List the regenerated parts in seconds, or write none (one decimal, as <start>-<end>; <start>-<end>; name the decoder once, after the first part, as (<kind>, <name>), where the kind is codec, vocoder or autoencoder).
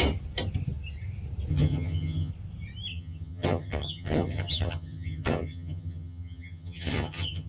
1.5-2.3 (vocoder, HiFi-GAN); 2.9-7.5